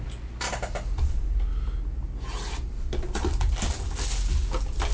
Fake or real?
real